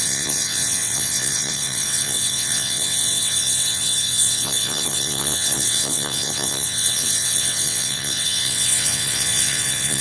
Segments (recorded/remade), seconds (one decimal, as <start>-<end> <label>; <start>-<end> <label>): 0.0-10.0 remade